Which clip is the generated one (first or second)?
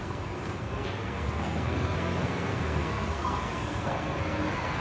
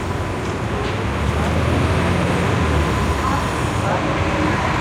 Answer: first